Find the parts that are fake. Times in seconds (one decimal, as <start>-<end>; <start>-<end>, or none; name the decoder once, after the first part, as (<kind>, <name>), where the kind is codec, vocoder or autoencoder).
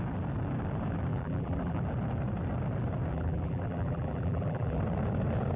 1.1-1.8 (vocoder, BigVGAN v2); 3.1-4.8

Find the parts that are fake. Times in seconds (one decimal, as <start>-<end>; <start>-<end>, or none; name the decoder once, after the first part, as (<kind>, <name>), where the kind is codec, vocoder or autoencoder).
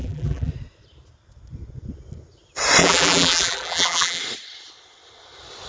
0.0-0.5 (vocoder, BigVGAN v2); 2.8-4.2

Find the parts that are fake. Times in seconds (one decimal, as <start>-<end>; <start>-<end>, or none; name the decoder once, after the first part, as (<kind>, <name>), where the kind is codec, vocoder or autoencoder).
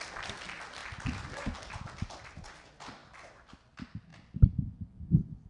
3.0-3.5 (vocoder, BigVGAN v2)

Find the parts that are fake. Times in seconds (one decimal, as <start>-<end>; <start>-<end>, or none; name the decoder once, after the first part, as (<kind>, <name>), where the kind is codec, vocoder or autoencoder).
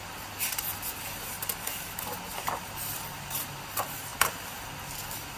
2.3-3.4 (vocoder, BigVGAN v2); 4.1-4.7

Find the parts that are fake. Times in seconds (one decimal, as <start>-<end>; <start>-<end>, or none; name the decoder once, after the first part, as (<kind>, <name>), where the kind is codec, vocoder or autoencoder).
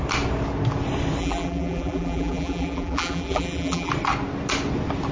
1.2-3.9 (vocoder, BigVGAN v2)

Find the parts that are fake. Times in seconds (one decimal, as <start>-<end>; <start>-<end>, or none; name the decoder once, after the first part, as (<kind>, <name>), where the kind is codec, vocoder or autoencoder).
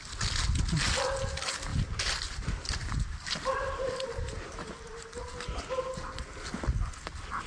1.7-5.2 (vocoder, BigVGAN v2)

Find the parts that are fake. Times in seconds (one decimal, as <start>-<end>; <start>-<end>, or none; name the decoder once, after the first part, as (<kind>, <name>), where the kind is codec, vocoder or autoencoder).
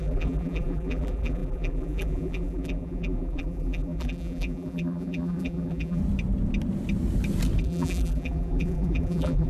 0.0-6.0 (vocoder, BigVGAN v2); 7.6-9.5